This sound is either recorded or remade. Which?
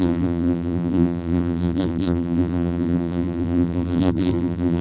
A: remade